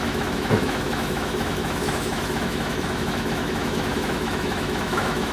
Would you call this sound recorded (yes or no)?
no